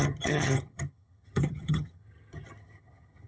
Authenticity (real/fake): fake